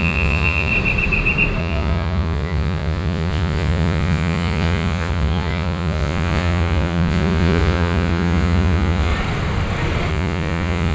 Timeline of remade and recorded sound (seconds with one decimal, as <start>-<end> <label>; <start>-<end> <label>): 0.0-0.7 remade; 0.7-1.6 recorded; 1.6-9.1 remade; 9.1-10.1 recorded; 10.1-10.9 remade